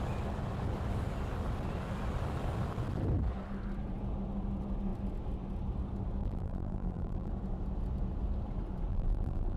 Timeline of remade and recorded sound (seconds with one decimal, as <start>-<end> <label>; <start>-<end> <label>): 0.0-6.2 recorded; 6.2-7.3 remade; 7.3-8.9 recorded; 8.9-9.6 remade